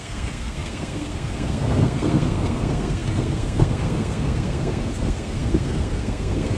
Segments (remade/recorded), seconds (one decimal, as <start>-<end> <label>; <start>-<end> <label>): 0.0-6.6 remade